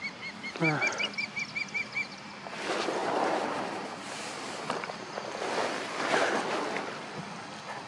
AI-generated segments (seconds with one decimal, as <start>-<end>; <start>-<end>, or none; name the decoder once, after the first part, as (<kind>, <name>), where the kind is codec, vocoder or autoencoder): 3.0-5.6 (vocoder, BigVGAN v2)